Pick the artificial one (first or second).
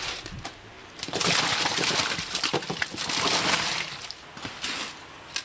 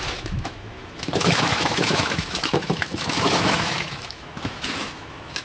second